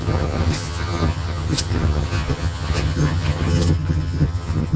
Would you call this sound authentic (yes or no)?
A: no